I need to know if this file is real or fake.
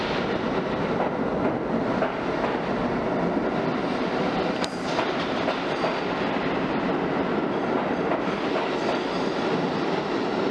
real